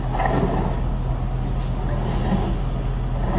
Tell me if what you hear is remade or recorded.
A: recorded